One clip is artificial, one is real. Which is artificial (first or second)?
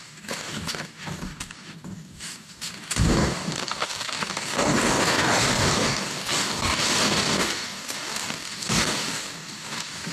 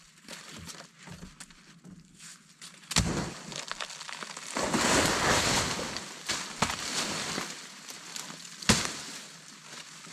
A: first